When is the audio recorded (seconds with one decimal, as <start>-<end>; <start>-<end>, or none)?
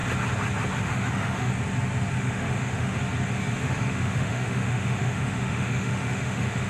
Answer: 0.0-0.8; 1.5-2.2; 3.0-3.6